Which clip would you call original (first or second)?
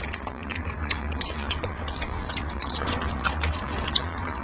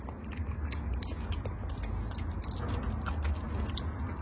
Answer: second